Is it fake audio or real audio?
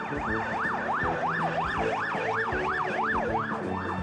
real